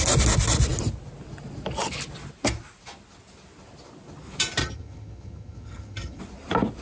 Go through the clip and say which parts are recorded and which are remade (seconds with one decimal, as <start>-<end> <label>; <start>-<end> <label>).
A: 0.0-4.6 recorded; 4.6-6.2 remade; 6.2-6.8 recorded